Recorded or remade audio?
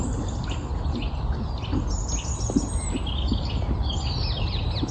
recorded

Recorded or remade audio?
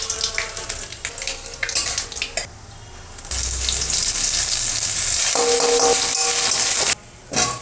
recorded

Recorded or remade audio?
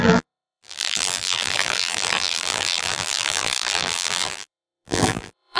remade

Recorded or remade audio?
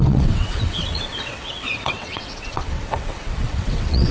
remade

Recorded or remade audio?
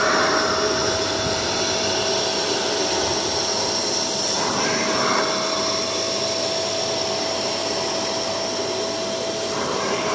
recorded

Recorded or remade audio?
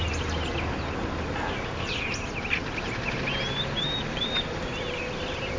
recorded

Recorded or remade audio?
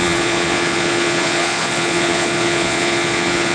remade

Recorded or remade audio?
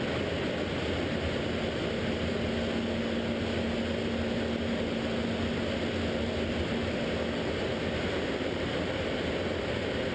recorded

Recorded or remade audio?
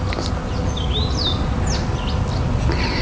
recorded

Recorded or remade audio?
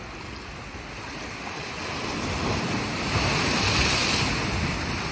recorded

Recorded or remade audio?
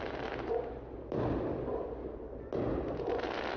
recorded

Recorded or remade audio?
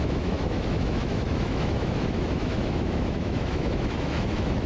remade